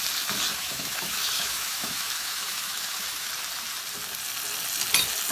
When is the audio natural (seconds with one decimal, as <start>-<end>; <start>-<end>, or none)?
0.0-0.5; 3.3-5.3